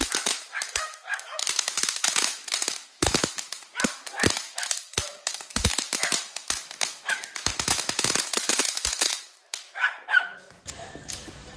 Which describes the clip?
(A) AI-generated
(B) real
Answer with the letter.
A